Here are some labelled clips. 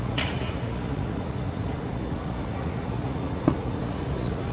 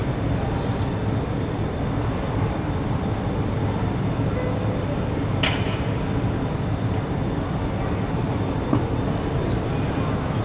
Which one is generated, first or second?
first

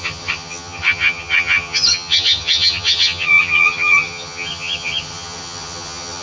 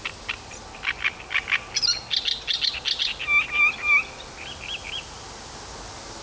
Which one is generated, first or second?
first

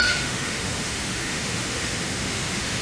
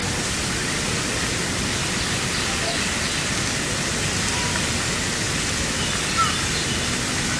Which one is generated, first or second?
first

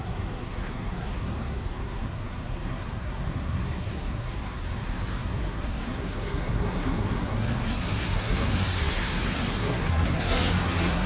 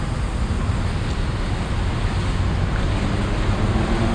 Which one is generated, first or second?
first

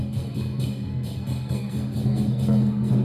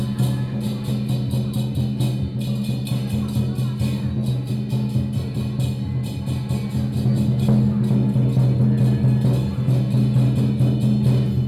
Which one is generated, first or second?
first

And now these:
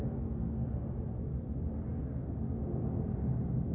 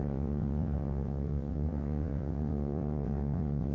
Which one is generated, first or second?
second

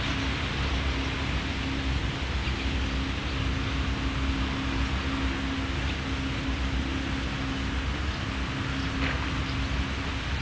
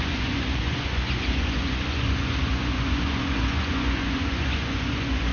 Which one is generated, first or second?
second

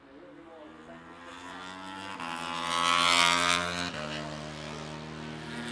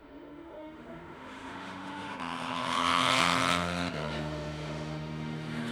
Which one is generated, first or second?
second